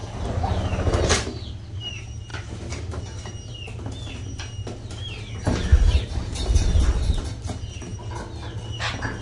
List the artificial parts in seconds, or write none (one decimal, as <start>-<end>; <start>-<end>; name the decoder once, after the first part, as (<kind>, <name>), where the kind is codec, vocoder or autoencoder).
2.3-3.0 (vocoder, BigVGAN v2); 5.7-6.4